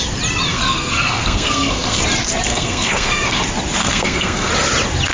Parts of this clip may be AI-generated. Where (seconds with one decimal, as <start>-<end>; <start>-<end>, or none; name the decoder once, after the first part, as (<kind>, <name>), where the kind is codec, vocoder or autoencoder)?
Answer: 0.5-2.0 (codec, SNAC); 2.5-3.4; 3.8-4.5